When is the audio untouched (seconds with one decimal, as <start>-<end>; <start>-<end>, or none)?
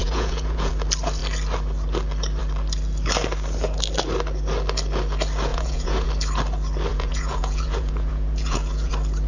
0.7-5.5; 6.1-6.9; 8.9-9.3